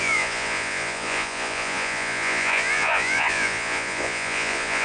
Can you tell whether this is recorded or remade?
remade